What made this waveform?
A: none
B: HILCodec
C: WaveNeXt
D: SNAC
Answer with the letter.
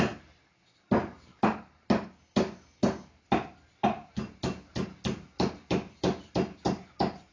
A